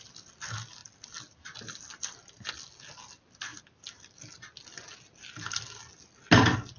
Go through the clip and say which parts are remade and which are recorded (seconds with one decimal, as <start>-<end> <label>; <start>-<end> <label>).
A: 0.0-0.8 recorded; 0.8-2.5 remade; 2.5-6.8 recorded